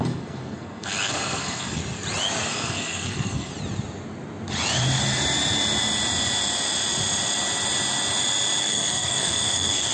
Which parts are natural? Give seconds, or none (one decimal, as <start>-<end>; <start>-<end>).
1.8-2.5; 3.5-8.6